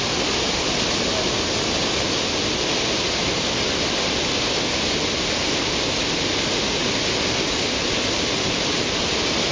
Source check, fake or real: real